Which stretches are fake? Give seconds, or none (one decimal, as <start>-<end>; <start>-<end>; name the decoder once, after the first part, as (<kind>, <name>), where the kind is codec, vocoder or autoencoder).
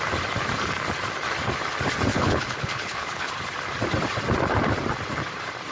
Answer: 2.1-3.3 (codec, HILCodec)